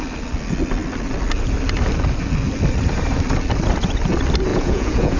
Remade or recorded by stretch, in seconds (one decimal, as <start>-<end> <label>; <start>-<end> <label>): 0.0-4.5 recorded; 4.5-5.2 remade

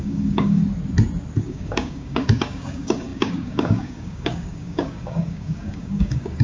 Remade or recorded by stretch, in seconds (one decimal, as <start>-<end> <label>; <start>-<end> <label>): 0.0-0.6 remade; 0.6-1.4 recorded; 1.4-6.4 remade

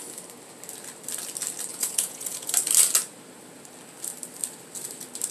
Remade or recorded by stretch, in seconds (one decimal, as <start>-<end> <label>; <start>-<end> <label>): 0.0-1.7 recorded; 1.7-2.5 remade; 2.5-5.3 recorded

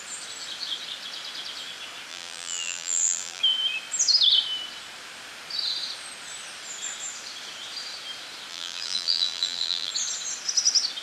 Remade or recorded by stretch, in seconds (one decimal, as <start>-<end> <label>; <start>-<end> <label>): 0.0-2.1 recorded; 2.1-3.4 remade; 3.4-8.5 recorded; 8.5-9.9 remade; 9.9-11.0 recorded

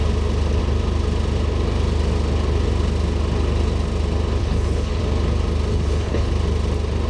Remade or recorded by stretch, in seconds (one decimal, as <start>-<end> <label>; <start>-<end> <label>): 0.0-4.4 recorded; 4.4-5.0 remade; 5.0-5.7 recorded; 5.7-6.3 remade; 6.3-7.1 recorded

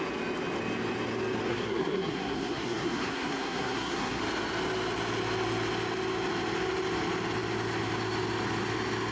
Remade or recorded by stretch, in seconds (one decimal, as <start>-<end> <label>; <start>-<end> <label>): 0.0-1.5 recorded; 1.5-4.2 remade; 4.2-9.1 recorded

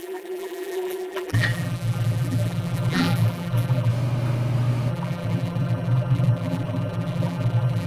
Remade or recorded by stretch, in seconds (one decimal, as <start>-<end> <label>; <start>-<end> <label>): 0.0-3.9 remade; 3.9-4.9 recorded; 4.9-7.9 remade